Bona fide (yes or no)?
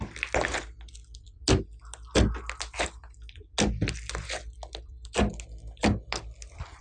yes